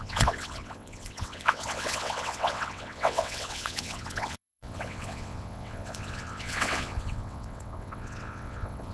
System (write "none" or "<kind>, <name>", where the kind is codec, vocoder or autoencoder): vocoder, WaveNeXt